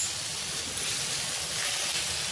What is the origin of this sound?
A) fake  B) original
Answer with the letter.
B